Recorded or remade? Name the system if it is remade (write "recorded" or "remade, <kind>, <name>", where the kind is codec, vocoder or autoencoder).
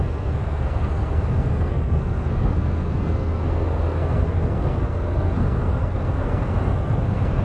remade, codec, SNAC